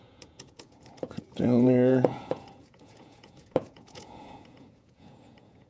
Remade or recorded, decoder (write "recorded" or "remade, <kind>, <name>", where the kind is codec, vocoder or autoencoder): remade, vocoder, Vocos